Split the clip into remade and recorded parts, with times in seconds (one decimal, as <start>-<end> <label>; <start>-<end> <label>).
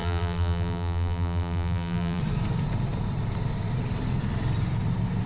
0.0-2.2 remade; 2.2-5.3 recorded